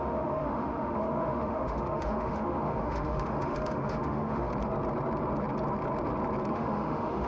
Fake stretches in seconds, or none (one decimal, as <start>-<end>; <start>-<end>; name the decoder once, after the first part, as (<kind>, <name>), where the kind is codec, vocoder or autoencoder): 0.0-4.5 (autoencoder, DAC-VAE); 6.5-7.3